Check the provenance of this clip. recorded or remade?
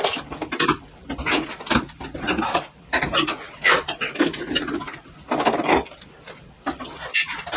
remade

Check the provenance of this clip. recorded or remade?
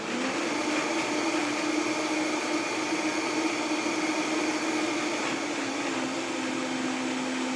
recorded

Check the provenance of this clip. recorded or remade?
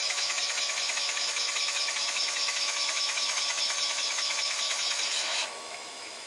remade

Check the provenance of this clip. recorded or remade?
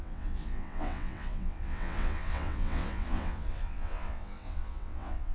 remade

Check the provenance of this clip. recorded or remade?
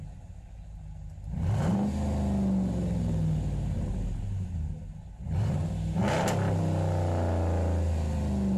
recorded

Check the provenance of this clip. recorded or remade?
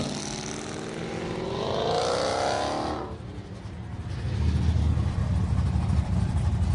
recorded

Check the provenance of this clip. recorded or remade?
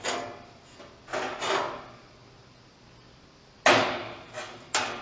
recorded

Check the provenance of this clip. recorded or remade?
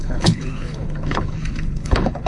remade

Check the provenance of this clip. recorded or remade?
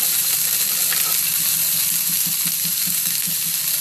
recorded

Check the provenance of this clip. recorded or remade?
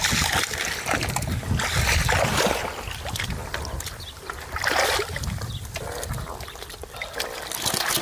recorded